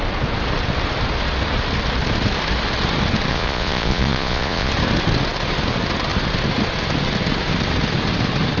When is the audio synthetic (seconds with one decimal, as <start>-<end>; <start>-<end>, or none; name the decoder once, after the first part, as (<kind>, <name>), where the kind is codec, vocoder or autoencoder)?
3.3-4.7 (vocoder, Vocos)

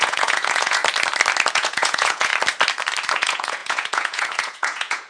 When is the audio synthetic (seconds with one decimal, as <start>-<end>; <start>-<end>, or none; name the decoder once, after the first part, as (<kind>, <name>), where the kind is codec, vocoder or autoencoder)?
0.0-0.8 (vocoder, Vocos); 1.5-2.3; 3.1-5.1

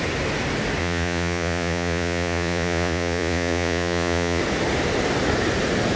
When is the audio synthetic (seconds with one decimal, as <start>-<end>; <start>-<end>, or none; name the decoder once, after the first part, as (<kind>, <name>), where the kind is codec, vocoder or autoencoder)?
0.8-4.4 (vocoder, Vocos)

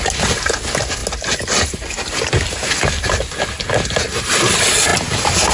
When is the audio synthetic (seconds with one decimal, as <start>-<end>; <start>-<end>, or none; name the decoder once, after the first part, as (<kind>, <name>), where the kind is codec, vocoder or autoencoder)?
none